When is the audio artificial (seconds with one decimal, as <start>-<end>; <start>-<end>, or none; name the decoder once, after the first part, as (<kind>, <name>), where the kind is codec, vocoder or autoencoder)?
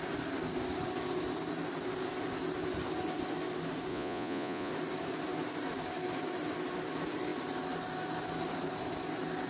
3.9-4.7 (vocoder, Vocos)